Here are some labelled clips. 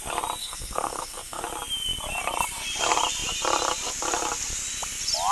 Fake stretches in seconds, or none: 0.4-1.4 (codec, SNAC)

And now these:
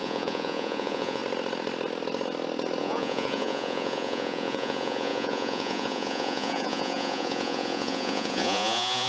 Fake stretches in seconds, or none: 0.0-1.2 (vocoder, Vocos); 2.8-9.1

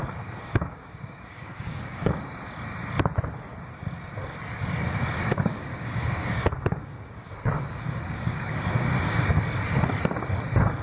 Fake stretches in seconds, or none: 0.5-2.1 (codec, DAC); 5.2-9.3

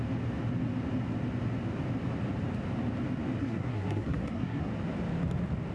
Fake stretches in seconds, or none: 3.4-4.7 (codec, SNAC)

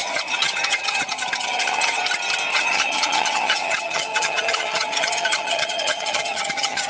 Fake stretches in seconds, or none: 0.0-2.0 (vocoder, HiFi-GAN); 2.5-6.9

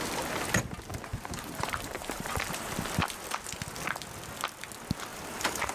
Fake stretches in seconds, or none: 1.1-2.7 (vocoder, BigVGAN v2); 5.1-5.7

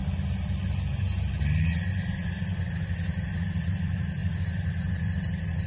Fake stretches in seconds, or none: none